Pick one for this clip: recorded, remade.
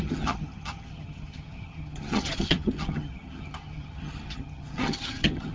remade